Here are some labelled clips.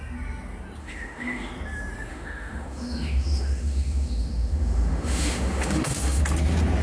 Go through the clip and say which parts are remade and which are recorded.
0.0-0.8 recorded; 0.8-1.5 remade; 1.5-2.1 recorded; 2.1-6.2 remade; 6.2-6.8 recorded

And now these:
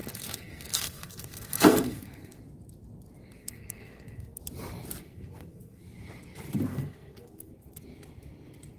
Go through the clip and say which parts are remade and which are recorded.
0.0-2.4 remade; 2.4-3.4 recorded; 3.4-4.4 remade; 4.4-5.0 recorded; 5.0-5.8 remade; 5.8-6.7 recorded; 6.7-7.5 remade; 7.5-8.8 recorded

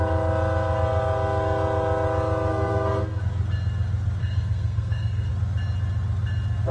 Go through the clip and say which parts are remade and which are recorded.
0.0-2.5 recorded; 2.5-3.2 remade; 3.2-4.2 recorded; 4.2-5.3 remade; 5.3-6.7 recorded

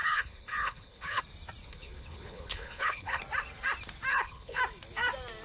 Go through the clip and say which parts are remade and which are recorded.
0.0-1.2 remade; 1.2-1.6 recorded; 1.6-3.2 remade; 3.2-4.1 recorded; 4.1-4.6 remade; 4.6-5.4 recorded

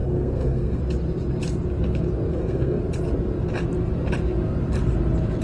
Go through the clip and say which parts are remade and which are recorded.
0.0-0.8 remade; 0.8-2.3 recorded; 2.3-2.8 remade; 2.8-5.4 recorded